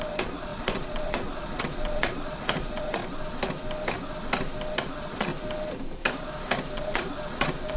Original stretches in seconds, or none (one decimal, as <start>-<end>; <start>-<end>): 3.0-4.8; 5.3-6.7